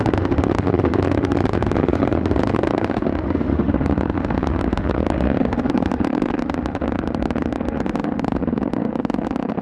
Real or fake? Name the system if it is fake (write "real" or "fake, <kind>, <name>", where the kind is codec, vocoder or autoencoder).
fake, autoencoder, DAC-VAE